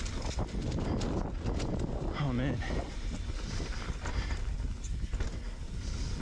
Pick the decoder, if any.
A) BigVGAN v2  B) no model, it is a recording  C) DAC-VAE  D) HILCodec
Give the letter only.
B